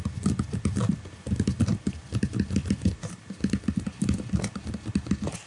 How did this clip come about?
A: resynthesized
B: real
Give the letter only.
B